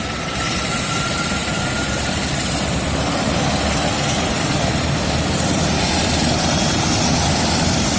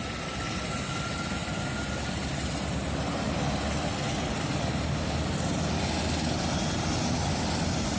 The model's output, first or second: first